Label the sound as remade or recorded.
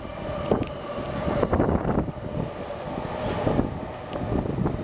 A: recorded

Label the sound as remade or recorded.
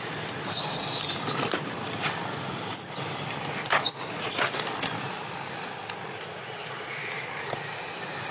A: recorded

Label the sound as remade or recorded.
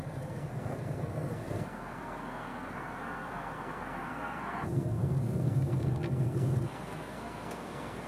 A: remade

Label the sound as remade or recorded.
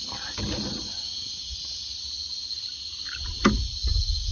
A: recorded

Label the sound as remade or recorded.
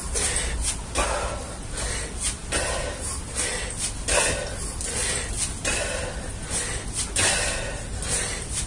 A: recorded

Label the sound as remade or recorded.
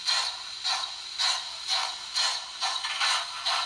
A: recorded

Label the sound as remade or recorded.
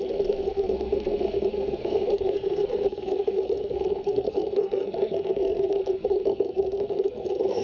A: remade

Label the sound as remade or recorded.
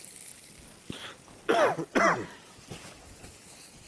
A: recorded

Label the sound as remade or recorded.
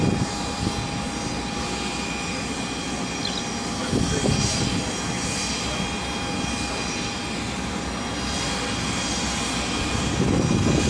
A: recorded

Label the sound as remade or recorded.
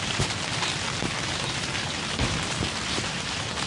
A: recorded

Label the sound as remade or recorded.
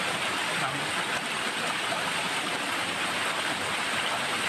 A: recorded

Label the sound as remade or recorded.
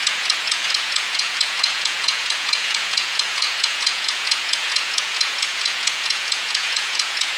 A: remade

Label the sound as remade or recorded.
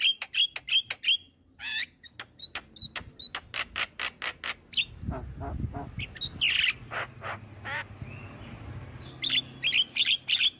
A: recorded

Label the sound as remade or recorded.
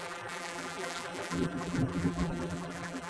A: remade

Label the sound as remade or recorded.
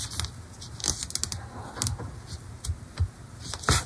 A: recorded